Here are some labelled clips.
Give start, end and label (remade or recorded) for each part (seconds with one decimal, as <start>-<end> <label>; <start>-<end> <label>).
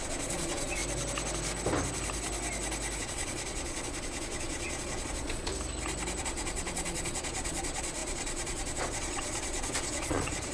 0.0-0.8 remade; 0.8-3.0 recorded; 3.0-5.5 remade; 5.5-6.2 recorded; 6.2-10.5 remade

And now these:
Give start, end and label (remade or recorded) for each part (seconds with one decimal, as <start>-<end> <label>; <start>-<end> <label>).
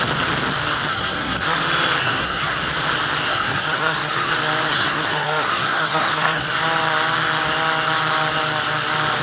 0.0-0.9 recorded; 0.9-1.6 remade; 1.6-2.0 recorded; 2.0-2.6 remade; 2.6-3.3 recorded; 3.3-4.3 remade; 4.3-4.7 recorded; 4.7-6.5 remade; 6.5-9.2 recorded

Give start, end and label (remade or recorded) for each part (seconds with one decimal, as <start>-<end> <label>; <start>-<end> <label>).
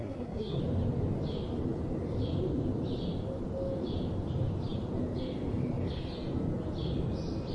0.0-0.6 remade; 0.6-7.5 recorded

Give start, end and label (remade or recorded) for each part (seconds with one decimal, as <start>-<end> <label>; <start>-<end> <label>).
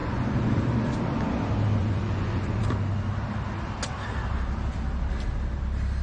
0.0-0.6 remade; 0.6-1.8 recorded; 1.8-2.6 remade; 2.6-6.0 recorded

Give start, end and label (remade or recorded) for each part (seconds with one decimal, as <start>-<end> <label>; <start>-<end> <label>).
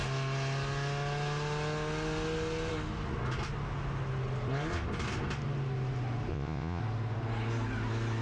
0.0-6.3 recorded; 6.3-6.8 remade; 6.8-8.2 recorded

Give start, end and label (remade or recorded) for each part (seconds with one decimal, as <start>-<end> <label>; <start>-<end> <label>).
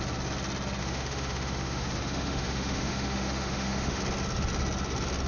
0.0-0.8 recorded; 0.8-4.0 remade; 4.0-5.3 recorded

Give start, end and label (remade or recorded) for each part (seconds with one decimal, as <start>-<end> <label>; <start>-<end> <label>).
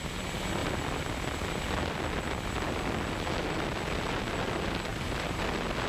0.0-4.9 recorded; 4.9-5.4 remade; 5.4-5.9 recorded